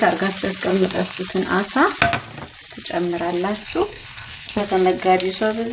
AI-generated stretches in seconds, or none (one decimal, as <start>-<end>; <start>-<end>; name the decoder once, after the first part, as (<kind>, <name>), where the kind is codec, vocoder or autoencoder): 0.7-1.2 (codec, SNAC); 3.6-4.6